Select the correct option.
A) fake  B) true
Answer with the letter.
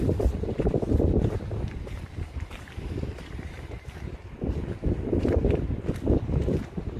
B